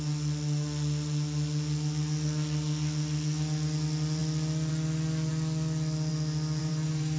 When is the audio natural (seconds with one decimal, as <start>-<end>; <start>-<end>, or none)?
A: 0.0-6.6